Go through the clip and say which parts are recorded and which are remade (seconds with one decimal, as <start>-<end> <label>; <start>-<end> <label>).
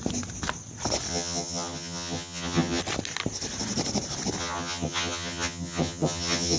0.0-1.1 recorded; 1.1-2.8 remade; 2.8-4.4 recorded; 4.4-6.6 remade